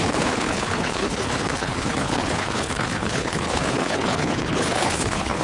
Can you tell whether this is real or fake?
fake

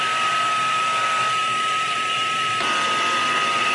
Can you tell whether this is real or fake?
fake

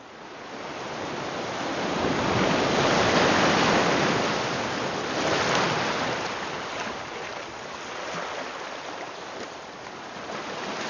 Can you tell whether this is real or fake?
real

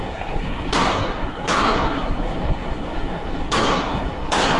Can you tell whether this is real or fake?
fake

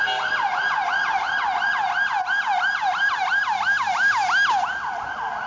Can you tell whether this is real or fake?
real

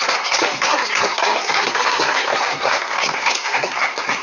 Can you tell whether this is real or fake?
fake